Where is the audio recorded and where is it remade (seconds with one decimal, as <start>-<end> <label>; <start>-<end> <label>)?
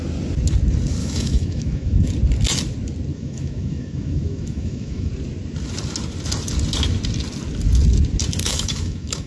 0.0-1.0 recorded; 1.0-2.1 remade; 2.1-3.1 recorded; 3.1-5.1 remade; 5.1-8.4 recorded; 8.4-9.3 remade